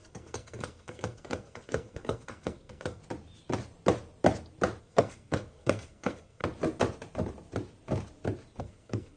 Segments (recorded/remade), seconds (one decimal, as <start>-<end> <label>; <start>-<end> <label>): 0.0-3.0 remade; 3.0-4.8 recorded; 4.8-6.4 remade; 6.4-8.6 recorded; 8.6-9.2 remade